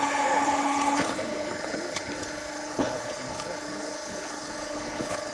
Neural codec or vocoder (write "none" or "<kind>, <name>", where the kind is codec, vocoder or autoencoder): codec, HILCodec